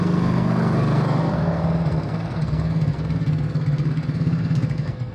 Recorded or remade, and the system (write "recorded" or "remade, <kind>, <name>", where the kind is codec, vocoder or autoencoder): remade, codec, SNAC